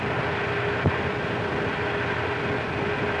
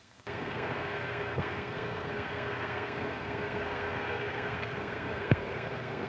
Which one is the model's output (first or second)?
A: second